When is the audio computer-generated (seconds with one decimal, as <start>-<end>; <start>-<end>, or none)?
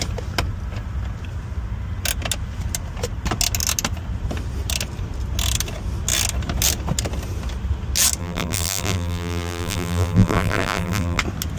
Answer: 8.2-11.2